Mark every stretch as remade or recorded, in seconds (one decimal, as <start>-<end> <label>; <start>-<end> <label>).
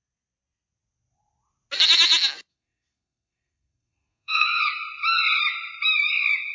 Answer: 0.0-2.5 recorded; 2.5-4.6 remade; 4.6-6.5 recorded